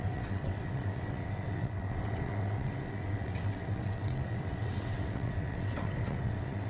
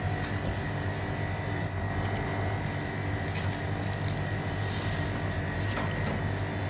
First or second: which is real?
second